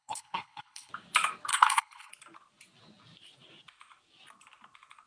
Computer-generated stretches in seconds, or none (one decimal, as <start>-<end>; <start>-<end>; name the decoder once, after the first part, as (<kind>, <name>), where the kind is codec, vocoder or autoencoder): 0.0-0.9 (codec, HILCodec); 1.5-2.1

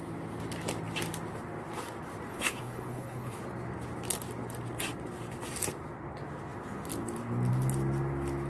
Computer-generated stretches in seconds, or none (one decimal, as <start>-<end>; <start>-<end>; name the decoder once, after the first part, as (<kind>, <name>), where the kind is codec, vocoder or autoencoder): 2.3-3.4 (codec, HILCodec)

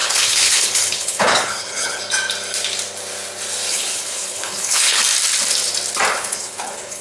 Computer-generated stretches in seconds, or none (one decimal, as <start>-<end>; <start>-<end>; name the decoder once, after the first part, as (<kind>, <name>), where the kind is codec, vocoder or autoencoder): 0.0-2.0 (codec, HILCodec); 3.7-5.0; 6.1-7.0